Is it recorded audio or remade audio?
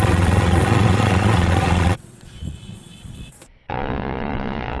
remade